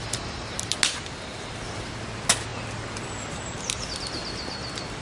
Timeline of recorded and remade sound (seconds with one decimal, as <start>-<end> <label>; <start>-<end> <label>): 0.0-5.0 recorded